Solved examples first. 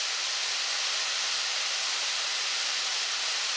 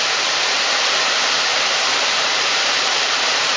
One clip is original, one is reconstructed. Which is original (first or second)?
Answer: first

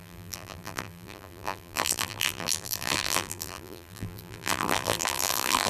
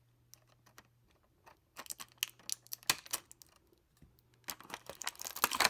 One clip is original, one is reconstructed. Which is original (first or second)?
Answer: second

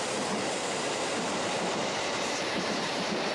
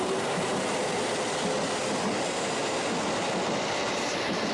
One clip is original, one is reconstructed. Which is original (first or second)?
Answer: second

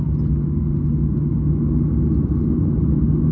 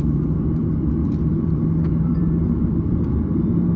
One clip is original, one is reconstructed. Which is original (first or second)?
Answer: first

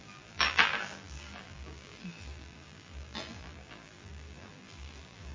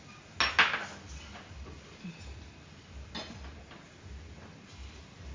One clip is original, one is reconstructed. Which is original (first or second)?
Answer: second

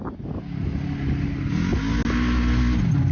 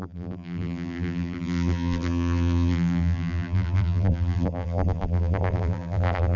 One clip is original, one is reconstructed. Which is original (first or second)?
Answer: first